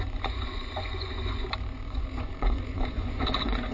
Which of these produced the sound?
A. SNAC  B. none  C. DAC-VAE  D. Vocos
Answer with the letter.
D